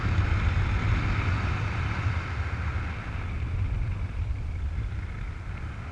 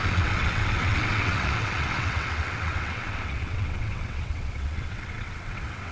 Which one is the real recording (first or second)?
first